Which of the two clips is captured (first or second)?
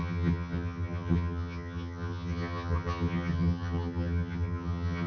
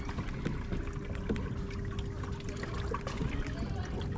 second